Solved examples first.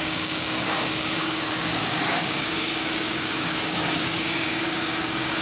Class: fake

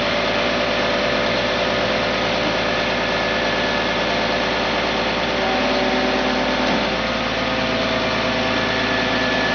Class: real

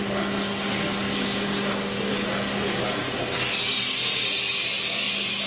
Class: real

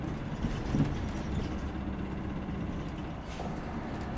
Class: real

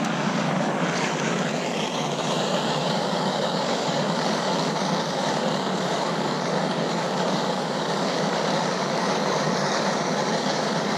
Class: fake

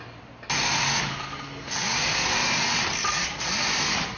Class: real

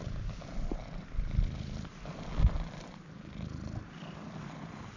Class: real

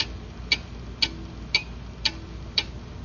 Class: real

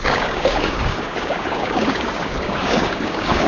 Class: fake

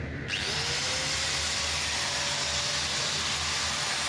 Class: real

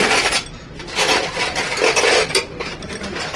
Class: real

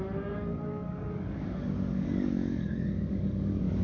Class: fake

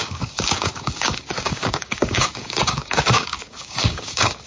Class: fake